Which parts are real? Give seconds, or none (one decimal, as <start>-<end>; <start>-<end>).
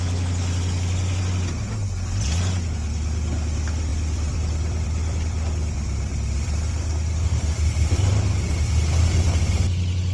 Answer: 0.0-3.9; 8.1-10.1